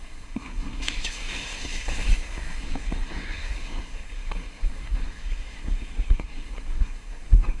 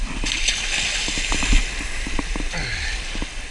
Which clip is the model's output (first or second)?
first